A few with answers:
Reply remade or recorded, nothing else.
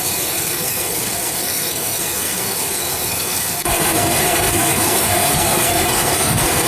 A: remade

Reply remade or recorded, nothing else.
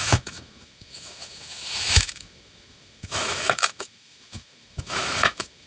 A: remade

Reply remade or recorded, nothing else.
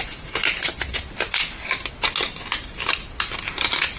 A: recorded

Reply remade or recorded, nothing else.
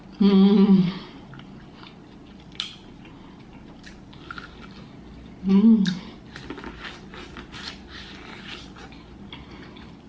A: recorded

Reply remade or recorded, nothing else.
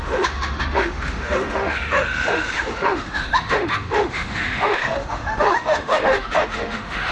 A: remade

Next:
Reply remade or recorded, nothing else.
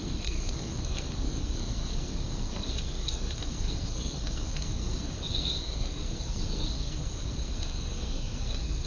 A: remade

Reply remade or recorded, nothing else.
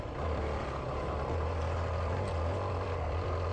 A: recorded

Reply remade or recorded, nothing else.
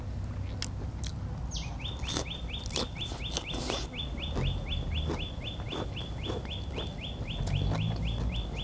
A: recorded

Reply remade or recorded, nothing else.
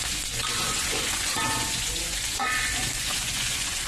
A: remade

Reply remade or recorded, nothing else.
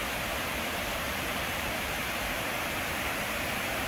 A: remade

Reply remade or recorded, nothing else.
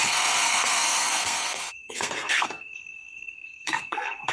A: remade